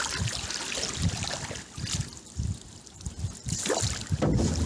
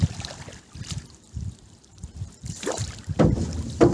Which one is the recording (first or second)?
first